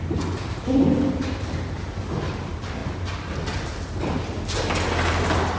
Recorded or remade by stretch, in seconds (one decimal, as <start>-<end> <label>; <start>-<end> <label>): 0.0-5.6 recorded